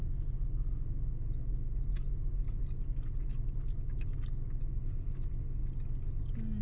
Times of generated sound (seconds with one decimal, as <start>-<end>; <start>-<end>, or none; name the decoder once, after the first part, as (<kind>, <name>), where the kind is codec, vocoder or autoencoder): none